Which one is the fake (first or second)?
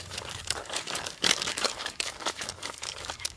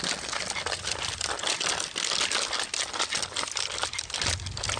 first